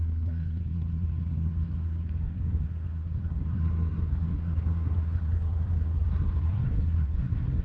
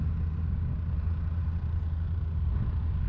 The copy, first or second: first